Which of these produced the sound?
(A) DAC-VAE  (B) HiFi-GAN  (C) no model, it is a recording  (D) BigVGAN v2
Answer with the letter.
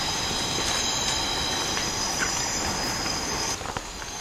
C